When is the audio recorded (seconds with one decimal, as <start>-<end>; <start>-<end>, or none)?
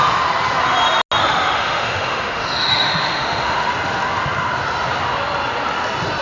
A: 0.0-1.2; 3.7-6.2